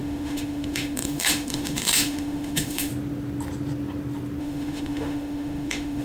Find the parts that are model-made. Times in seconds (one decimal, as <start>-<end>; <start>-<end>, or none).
0.0-2.9; 4.4-6.0